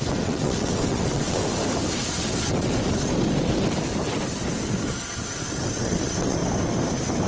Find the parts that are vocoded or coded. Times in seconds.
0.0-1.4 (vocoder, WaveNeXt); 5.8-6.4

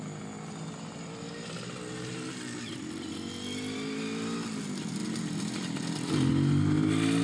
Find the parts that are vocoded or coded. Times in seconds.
none

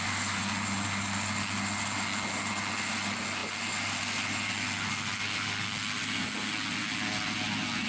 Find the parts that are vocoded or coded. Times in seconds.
none

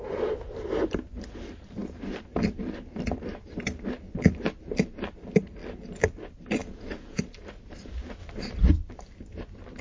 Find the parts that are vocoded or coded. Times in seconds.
6.6-7.2 (vocoder, Vocos)

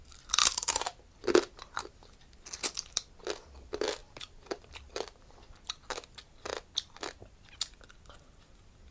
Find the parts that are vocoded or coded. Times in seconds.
0.4-1.0 (vocoder, BigVGAN v2); 4.0-6.1